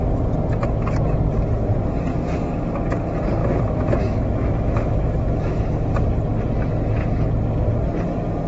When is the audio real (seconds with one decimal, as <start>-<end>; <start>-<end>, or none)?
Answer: 0.0-2.1; 2.7-3.4; 5.6-8.5